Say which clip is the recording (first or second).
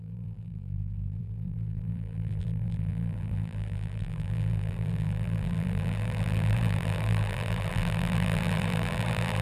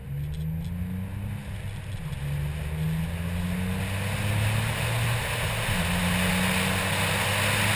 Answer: second